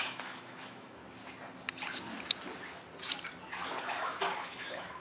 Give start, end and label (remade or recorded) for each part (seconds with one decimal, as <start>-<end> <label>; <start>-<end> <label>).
0.0-1.0 remade; 1.0-3.8 recorded; 3.8-5.0 remade